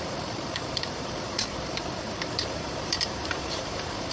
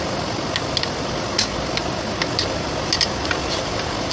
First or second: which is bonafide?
second